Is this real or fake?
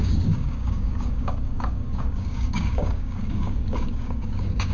fake